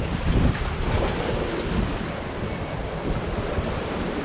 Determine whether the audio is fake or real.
real